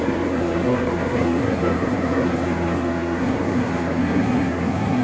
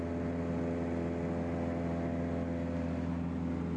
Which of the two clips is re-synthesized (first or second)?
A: first